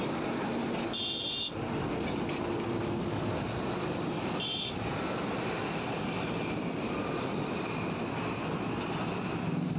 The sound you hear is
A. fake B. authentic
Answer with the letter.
B